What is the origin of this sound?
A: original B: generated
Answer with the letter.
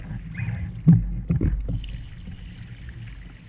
A